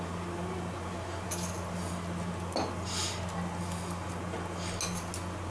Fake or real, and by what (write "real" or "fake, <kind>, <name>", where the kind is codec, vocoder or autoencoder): real